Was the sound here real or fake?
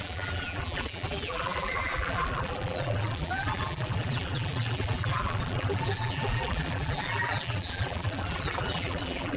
fake